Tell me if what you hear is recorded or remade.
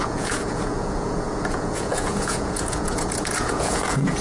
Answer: remade